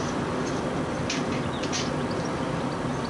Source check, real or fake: real